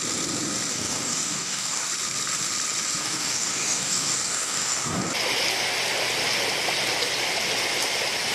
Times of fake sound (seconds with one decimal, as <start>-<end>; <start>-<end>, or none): 0.7-1.9; 3.0-5.0